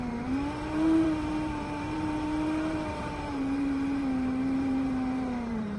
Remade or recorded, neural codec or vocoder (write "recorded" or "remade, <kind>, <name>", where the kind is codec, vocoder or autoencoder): remade, vocoder, BigVGAN v2